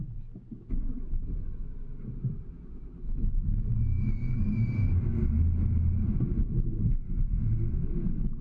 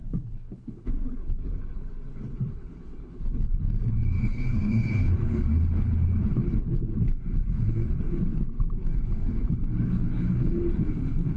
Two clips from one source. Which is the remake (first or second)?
second